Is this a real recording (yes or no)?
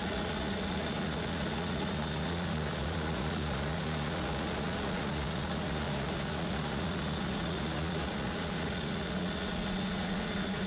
no